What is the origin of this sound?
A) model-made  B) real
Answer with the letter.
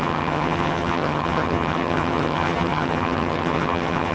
A